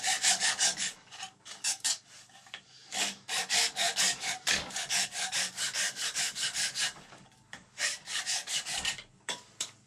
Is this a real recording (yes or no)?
no